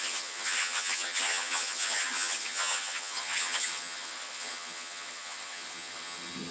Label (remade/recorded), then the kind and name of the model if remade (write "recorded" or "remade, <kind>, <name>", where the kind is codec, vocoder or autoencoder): remade, vocoder, HiFi-GAN